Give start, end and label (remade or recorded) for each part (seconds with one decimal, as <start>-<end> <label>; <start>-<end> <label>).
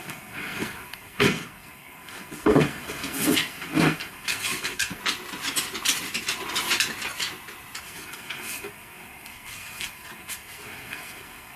0.0-5.0 remade; 5.0-7.8 recorded; 7.8-11.6 remade